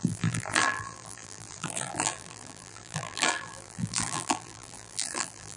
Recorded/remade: remade